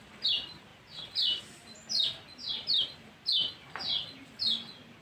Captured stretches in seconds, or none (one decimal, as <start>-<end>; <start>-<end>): 0.0-5.0